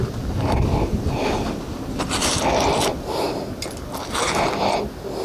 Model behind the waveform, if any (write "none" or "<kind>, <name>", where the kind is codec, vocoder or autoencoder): none